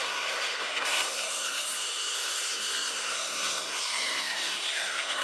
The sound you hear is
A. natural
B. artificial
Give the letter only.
B